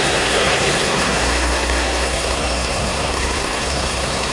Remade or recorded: remade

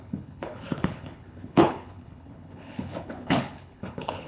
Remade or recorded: remade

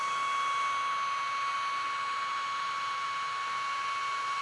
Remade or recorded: recorded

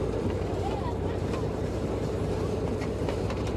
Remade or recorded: remade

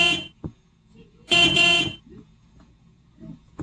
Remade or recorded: remade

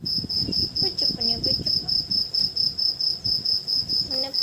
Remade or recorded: recorded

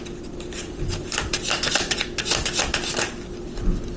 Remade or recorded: recorded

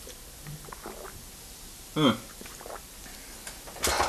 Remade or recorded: recorded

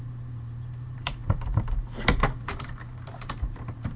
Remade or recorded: remade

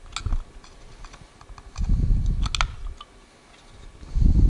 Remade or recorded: recorded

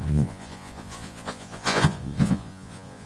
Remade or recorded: remade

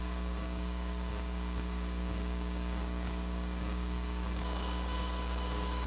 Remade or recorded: remade